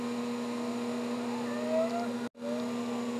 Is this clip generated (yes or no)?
no